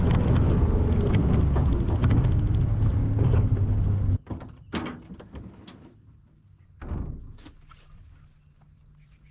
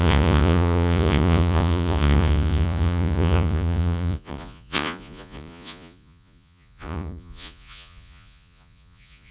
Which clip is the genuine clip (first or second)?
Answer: first